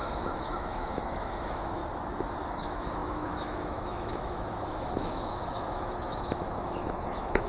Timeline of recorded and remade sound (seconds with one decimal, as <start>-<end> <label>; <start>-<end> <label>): 0.0-1.8 remade; 1.8-2.4 recorded; 2.4-7.5 remade